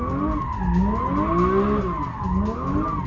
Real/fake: real